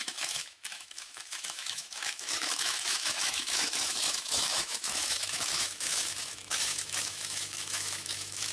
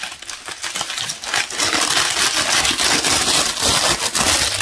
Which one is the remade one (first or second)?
first